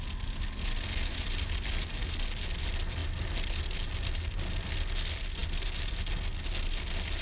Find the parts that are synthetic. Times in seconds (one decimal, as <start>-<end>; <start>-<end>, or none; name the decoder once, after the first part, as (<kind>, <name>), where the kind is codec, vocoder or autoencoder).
none